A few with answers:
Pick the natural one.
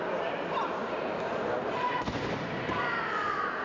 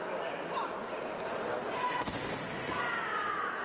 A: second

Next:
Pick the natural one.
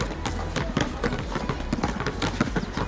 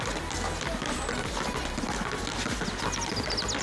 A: second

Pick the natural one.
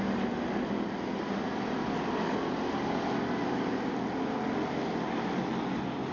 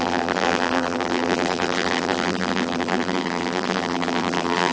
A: first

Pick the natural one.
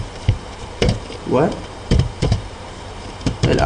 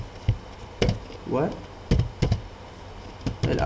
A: second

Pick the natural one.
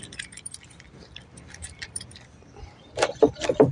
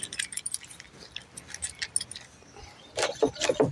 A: second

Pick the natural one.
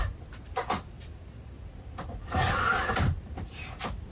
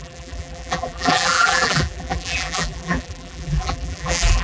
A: first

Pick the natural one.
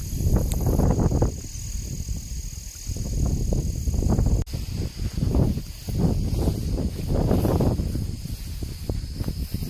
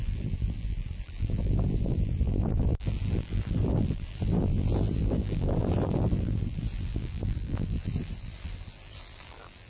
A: first